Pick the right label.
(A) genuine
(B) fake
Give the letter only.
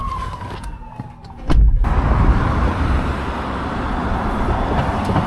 A